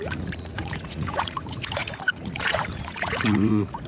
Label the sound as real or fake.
fake